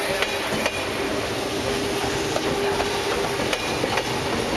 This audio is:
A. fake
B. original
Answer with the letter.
B